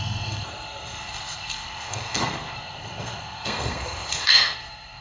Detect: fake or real fake